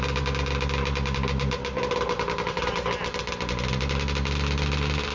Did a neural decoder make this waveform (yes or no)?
no